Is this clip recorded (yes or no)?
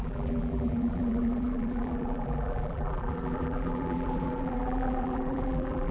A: no